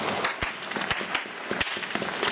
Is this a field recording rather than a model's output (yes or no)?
yes